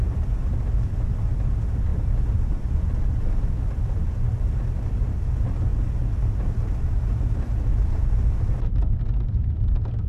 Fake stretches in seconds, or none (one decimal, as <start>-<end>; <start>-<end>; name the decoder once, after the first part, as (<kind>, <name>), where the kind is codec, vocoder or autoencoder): none